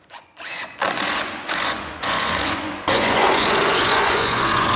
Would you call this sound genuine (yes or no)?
no